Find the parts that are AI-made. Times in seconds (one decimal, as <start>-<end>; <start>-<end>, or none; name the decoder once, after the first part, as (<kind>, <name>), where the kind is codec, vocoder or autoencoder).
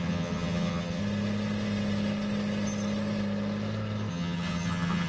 0.0-1.0 (vocoder, HiFi-GAN); 4.1-5.1